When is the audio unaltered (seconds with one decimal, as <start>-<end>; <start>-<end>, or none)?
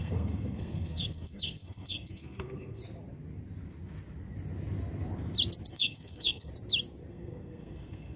2.8-5.7; 6.5-7.1